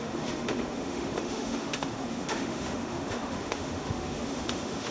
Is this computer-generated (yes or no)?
yes